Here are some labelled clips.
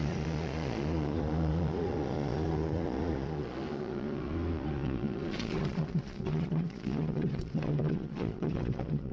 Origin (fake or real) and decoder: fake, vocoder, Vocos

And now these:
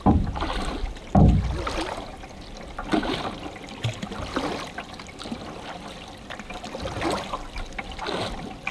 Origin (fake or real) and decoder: real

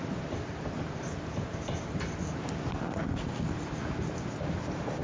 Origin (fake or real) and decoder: real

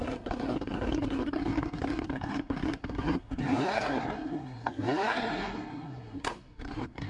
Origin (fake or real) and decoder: fake, codec, SNAC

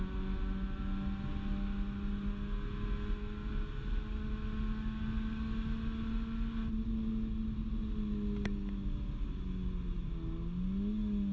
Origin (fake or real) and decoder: real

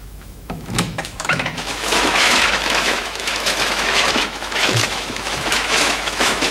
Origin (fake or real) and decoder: fake, autoencoder, DAC-VAE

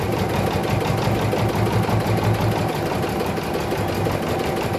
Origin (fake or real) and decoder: real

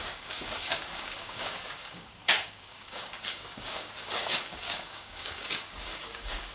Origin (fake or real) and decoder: fake, codec, DAC